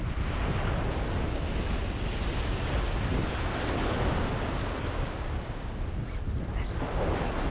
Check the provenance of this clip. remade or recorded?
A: recorded